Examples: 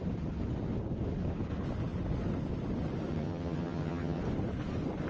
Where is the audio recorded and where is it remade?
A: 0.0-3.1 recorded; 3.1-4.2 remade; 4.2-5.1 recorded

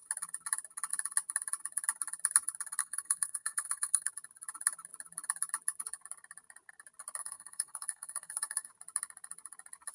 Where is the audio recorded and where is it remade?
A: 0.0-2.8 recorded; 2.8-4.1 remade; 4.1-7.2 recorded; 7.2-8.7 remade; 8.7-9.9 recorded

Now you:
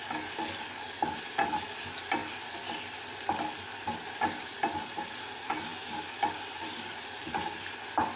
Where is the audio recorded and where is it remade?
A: 0.0-2.2 recorded; 2.2-5.2 remade; 5.2-5.7 recorded; 5.7-7.2 remade; 7.2-8.2 recorded

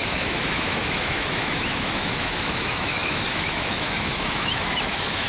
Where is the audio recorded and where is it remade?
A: 0.0-5.3 remade

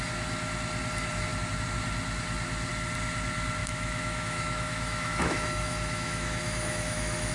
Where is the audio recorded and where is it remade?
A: 0.0-3.6 recorded; 3.6-7.3 remade

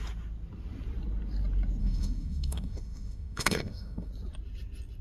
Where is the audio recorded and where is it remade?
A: 0.0-1.8 recorded; 1.8-4.1 remade; 4.1-5.0 recorded

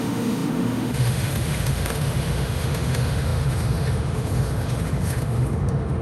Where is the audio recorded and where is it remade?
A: 0.0-6.0 remade

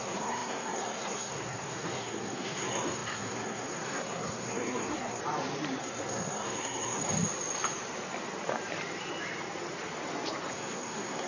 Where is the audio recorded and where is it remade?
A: 0.0-5.2 remade; 5.2-5.8 recorded; 5.8-7.0 remade; 7.0-10.5 recorded; 10.5-11.3 remade